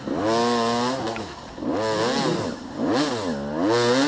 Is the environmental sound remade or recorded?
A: recorded